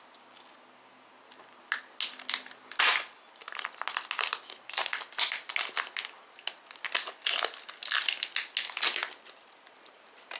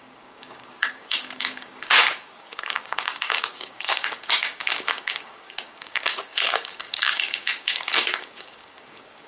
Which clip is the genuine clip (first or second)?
first